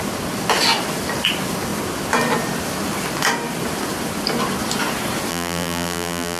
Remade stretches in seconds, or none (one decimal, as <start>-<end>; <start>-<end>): 5.3-6.4

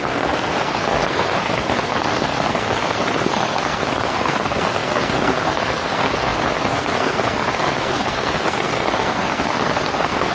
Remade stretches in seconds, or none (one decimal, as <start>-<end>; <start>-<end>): 0.0-10.3

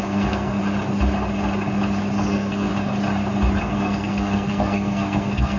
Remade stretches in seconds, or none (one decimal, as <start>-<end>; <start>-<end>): 0.0-0.6; 2.3-2.7; 3.6-5.6

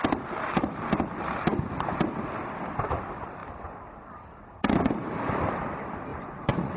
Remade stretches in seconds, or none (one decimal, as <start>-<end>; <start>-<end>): 6.1-6.8

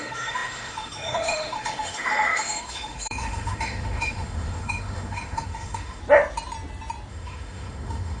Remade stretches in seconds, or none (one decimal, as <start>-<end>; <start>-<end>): 0.0-6.0; 7.1-8.2

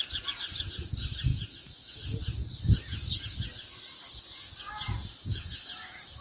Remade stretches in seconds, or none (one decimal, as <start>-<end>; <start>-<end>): 1.3-2.0; 5.3-6.2

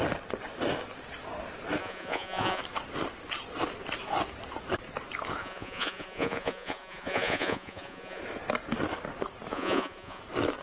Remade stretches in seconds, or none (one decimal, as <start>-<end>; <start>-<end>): 1.8-2.6; 5.4-8.2; 9.5-10.2

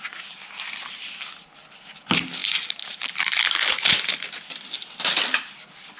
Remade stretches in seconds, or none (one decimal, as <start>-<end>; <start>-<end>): none